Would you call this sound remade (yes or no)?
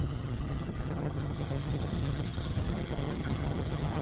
yes